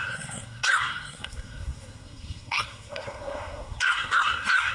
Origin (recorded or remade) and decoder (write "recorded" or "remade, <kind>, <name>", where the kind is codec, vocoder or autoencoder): remade, codec, SNAC